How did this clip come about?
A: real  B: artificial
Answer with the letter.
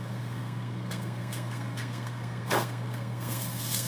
B